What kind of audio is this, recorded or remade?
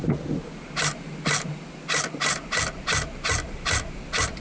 recorded